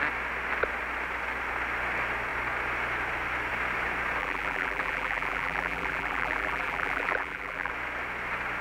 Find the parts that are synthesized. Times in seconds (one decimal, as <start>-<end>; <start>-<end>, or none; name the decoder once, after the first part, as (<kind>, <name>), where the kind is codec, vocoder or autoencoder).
4.2-7.7 (vocoder, BigVGAN v2)